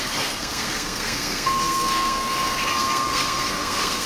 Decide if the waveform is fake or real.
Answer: fake